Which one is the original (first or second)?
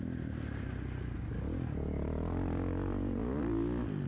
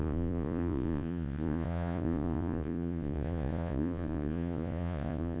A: first